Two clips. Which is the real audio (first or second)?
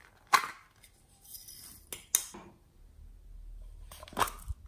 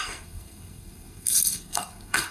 first